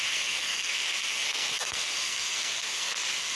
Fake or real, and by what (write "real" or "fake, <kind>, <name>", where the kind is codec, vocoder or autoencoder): fake, codec, SNAC